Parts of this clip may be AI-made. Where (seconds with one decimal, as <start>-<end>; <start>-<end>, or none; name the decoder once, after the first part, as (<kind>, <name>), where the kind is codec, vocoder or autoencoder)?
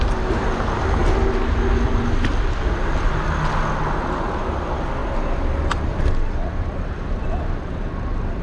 none